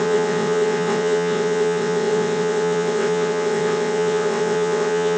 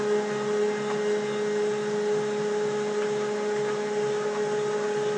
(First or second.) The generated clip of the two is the first